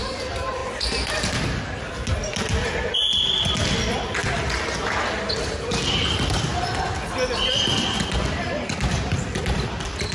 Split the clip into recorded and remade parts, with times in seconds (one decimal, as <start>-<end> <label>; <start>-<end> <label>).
0.0-0.6 remade; 0.6-2.6 recorded; 2.6-4.2 remade; 4.2-5.4 recorded; 5.4-6.5 remade; 6.5-7.5 recorded; 7.5-10.1 remade